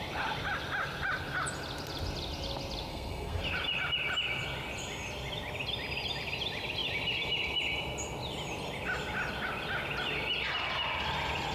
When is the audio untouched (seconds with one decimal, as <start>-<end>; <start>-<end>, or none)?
0.0-2.9; 3.4-11.5